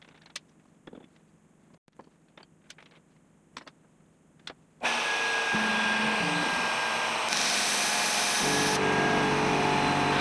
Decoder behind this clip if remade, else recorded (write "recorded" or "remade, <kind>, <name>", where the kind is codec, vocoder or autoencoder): recorded